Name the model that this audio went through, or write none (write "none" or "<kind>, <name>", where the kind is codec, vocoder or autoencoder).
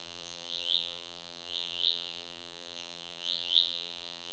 vocoder, BigVGAN v2